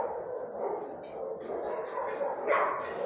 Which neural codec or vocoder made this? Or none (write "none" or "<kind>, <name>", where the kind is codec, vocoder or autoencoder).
none